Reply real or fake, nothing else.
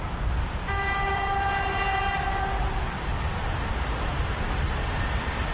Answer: real